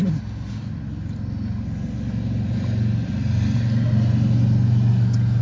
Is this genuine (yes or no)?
yes